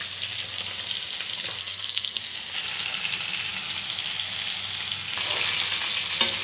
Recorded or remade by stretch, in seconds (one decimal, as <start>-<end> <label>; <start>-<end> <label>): 0.0-1.6 recorded; 1.6-2.2 remade; 2.2-6.4 recorded